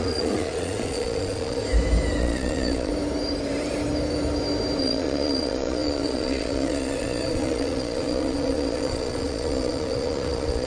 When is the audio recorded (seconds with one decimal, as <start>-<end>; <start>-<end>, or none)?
1.6-2.2; 2.9-4.8